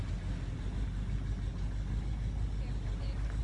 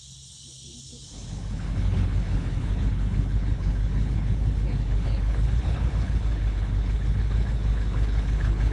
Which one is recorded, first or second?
first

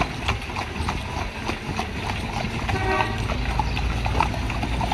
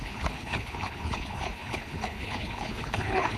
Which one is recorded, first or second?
first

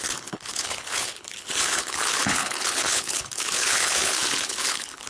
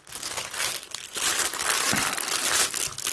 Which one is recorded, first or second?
second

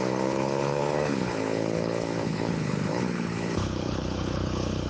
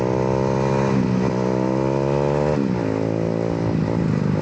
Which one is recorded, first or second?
second